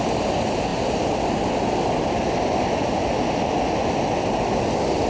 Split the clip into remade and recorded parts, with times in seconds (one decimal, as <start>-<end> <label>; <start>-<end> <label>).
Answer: 0.0-5.1 recorded